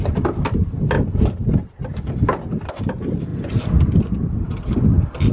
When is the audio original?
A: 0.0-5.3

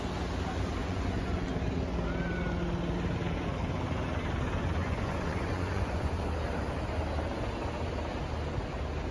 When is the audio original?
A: 0.0-0.8; 1.5-4.8; 6.2-9.1

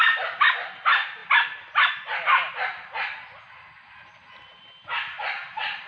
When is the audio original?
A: 0.0-5.9

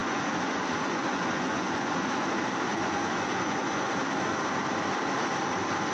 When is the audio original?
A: 2.3-2.7; 4.0-5.9

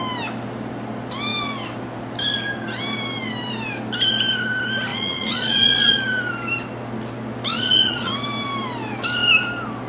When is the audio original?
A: 0.0-4.9; 6.0-7.5; 8.1-9.9